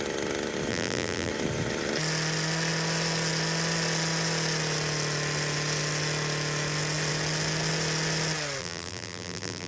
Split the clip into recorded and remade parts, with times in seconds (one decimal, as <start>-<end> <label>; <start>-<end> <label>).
0.0-0.7 recorded; 0.7-1.3 remade; 1.3-8.6 recorded; 8.6-9.7 remade